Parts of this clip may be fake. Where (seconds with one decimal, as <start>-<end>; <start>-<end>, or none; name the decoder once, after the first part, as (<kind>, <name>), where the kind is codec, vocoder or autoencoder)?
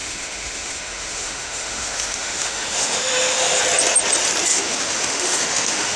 0.0-3.6 (autoencoder, DAC-VAE); 4.5-6.0